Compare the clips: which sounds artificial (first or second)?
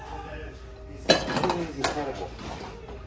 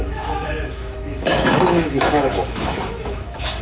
second